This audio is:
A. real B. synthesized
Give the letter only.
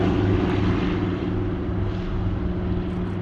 A